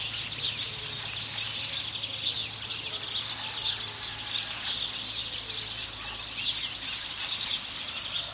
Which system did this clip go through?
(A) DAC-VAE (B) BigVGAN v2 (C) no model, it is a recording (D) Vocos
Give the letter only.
C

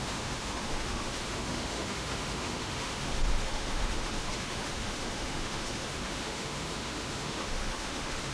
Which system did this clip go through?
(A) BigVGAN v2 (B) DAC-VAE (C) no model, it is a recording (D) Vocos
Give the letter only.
B